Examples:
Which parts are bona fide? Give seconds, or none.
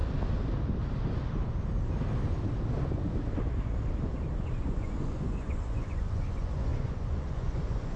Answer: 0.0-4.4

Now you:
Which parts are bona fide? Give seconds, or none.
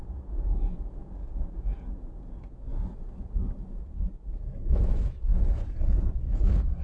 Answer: 2.7-3.8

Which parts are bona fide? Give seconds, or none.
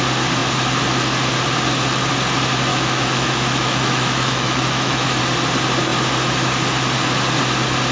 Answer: 0.0-2.7; 5.2-7.9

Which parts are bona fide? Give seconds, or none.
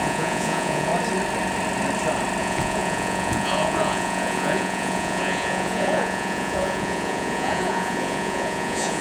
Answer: 0.9-2.4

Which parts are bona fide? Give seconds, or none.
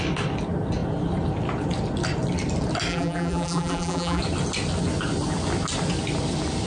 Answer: 0.0-2.9; 4.2-6.7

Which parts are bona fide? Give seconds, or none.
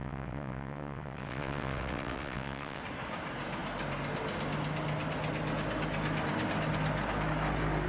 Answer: 2.8-7.9